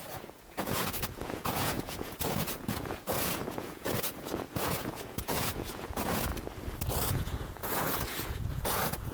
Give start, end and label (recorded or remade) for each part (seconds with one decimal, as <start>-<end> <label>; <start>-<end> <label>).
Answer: 0.0-6.3 remade; 6.3-7.1 recorded; 7.1-9.1 remade